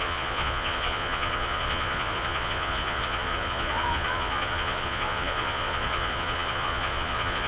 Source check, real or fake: fake